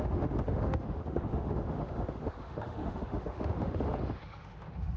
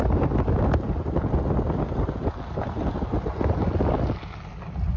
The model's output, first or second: first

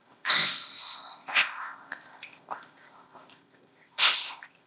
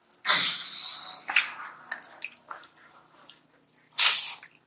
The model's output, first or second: first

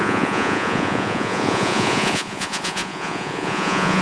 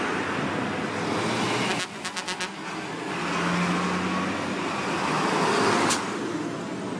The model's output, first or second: first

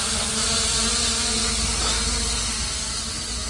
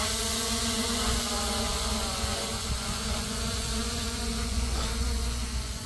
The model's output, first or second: second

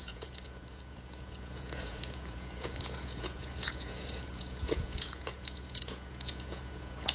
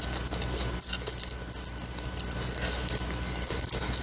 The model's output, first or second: first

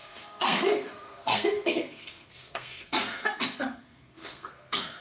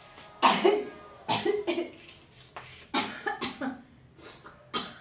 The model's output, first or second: first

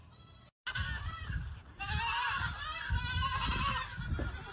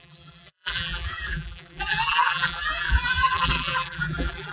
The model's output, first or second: second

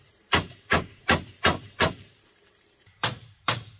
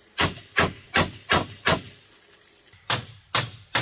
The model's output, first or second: first